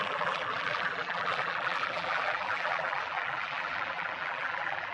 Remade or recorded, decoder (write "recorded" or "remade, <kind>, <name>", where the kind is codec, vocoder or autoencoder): remade, vocoder, BigVGAN v2